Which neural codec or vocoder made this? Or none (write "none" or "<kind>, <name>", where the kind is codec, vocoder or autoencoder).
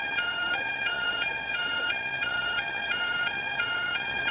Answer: vocoder, WaveNeXt